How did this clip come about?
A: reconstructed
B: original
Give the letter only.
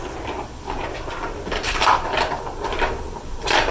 A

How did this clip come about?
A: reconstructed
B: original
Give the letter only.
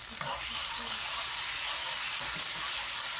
A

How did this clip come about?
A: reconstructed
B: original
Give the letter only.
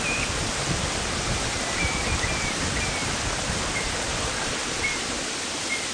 B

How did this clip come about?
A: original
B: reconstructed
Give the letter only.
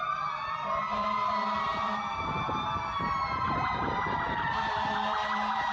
B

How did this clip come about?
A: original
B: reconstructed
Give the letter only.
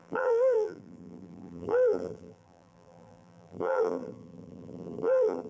B